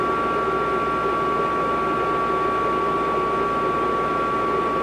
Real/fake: real